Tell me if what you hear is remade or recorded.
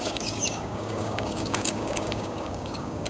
remade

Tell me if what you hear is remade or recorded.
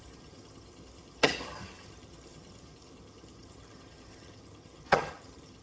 remade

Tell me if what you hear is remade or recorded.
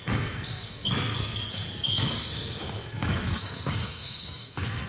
remade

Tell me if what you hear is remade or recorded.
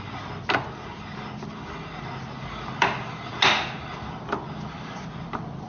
recorded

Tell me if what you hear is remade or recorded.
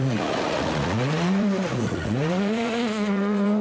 remade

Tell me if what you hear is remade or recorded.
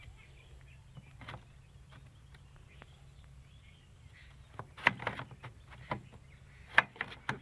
recorded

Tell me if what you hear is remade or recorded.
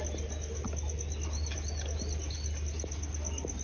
recorded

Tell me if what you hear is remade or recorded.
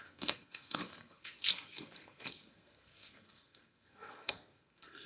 remade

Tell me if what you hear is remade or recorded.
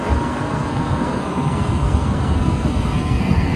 remade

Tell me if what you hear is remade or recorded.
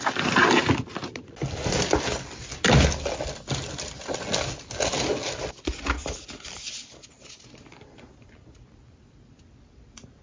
recorded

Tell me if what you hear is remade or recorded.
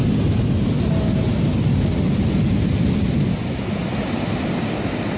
recorded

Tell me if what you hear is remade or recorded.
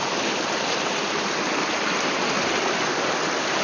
recorded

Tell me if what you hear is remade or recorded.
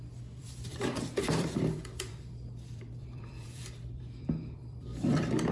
remade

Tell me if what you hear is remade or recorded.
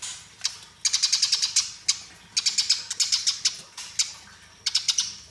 recorded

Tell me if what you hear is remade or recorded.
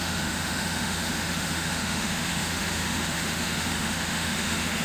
remade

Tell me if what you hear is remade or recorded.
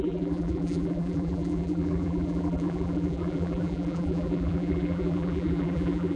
remade